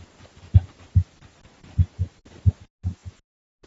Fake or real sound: real